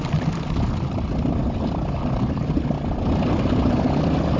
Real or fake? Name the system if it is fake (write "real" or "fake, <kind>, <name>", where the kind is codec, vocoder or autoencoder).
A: real